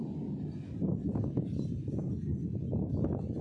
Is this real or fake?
real